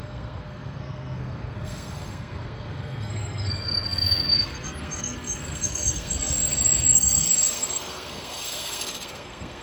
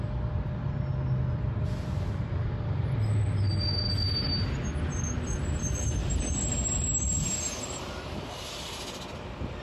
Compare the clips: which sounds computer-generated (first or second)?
first